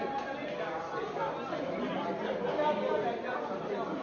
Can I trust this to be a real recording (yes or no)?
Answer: yes